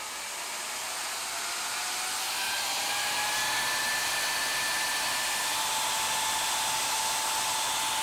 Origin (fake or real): real